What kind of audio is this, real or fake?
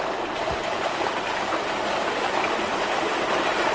real